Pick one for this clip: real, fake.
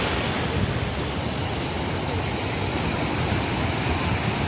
real